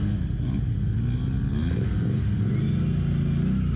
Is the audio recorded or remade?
recorded